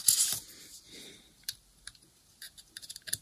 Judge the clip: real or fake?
real